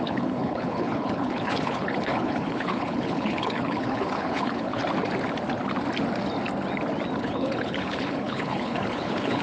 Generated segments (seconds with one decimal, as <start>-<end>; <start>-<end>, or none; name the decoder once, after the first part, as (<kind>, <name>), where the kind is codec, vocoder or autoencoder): 0.0-4.8 (codec, HILCodec); 7.2-9.4